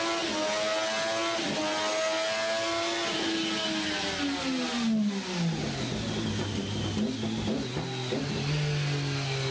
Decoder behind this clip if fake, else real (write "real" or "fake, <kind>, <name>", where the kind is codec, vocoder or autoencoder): real